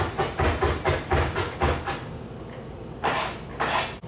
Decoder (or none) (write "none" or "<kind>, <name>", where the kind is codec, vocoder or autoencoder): none